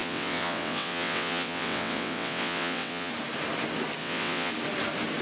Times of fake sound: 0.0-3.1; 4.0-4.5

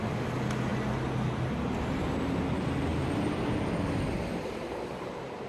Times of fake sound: none

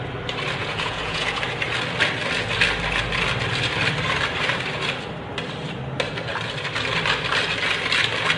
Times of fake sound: 0.6-1.4

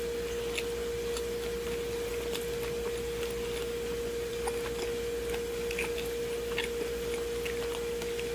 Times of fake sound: none

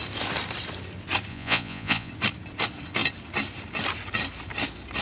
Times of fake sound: 1.3-2.1

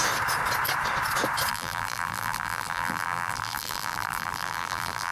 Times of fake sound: 1.5-5.1

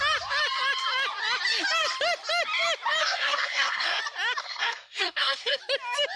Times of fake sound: 3.0-4.0; 4.4-5.6

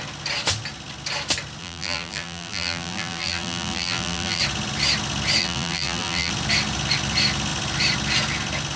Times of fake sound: 1.6-4.4; 5.4-6.3